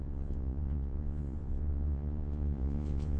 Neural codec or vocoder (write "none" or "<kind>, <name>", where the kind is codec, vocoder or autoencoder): vocoder, Vocos